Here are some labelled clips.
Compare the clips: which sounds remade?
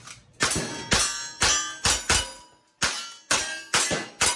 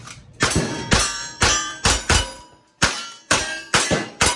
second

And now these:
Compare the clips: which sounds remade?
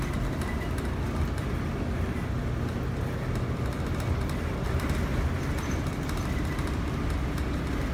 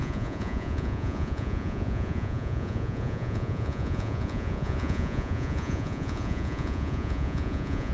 second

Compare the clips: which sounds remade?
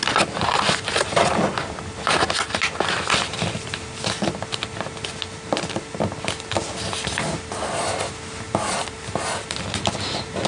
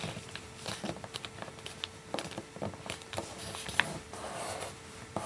second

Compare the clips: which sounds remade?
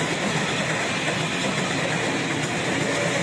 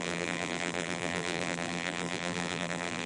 second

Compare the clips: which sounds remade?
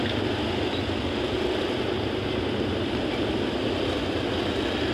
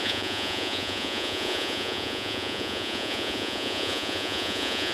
second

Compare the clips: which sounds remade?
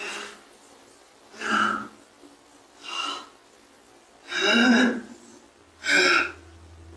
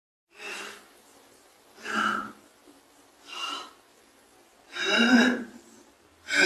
second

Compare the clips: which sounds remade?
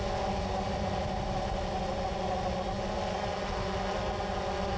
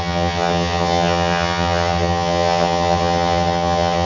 second